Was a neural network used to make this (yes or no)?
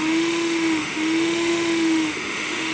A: yes